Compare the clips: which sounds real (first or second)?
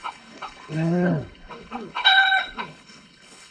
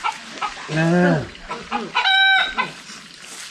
second